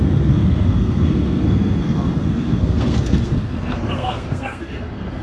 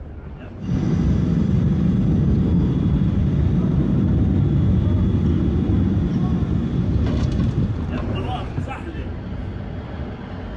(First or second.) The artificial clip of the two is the first